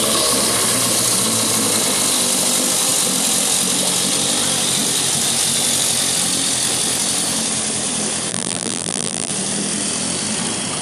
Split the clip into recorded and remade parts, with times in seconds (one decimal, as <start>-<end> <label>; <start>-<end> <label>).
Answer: 0.0-8.3 recorded; 8.3-9.3 remade; 9.3-10.8 recorded